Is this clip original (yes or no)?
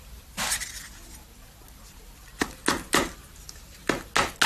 yes